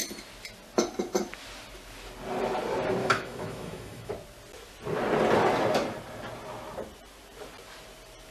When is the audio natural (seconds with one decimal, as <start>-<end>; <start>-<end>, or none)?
0.0-3.0; 4.1-8.3